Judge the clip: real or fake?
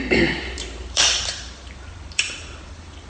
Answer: fake